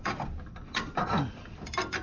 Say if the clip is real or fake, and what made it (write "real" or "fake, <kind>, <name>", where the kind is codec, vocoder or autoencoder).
real